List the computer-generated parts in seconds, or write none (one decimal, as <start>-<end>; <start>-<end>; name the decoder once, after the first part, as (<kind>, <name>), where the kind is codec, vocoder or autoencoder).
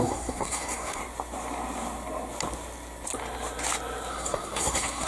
0.0-1.0 (codec, SNAC); 4.1-5.1